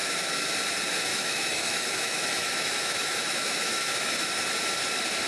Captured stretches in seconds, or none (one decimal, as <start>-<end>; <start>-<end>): 0.5-1.1; 4.3-5.3